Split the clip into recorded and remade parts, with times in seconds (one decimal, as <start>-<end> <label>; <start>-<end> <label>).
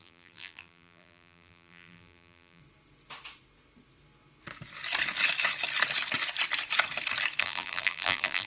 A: 0.0-2.6 remade; 2.6-7.4 recorded; 7.4-8.5 remade